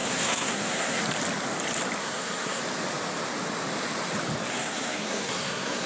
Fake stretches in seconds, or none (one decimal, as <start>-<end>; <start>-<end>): 0.0-1.0; 2.0-2.6; 4.5-5.9